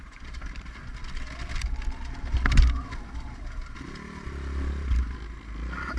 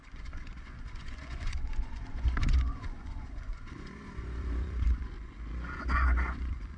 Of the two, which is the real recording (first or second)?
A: first